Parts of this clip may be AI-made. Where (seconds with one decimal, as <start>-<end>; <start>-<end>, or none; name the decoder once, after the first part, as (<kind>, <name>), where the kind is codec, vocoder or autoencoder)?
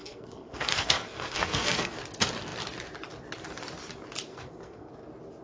0.0-2.0 (codec, SNAC); 4.3-4.9